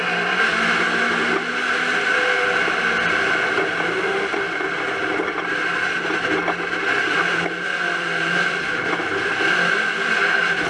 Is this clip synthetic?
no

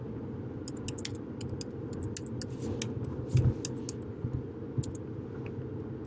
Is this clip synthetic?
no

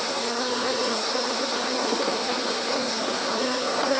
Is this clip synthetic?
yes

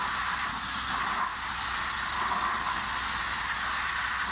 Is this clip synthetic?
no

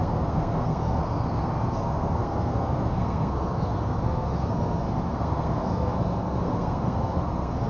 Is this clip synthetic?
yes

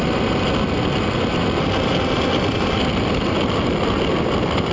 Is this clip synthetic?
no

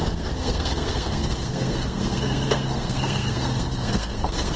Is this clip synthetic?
yes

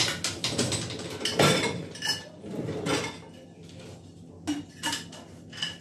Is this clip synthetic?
no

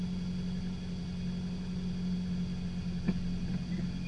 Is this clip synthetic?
no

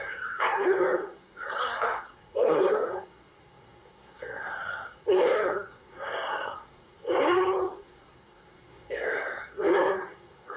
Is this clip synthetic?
yes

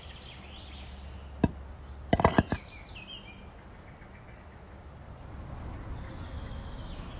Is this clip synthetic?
no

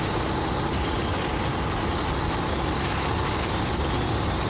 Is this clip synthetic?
no